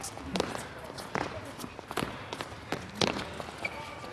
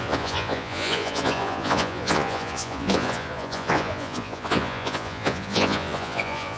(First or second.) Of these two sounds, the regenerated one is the second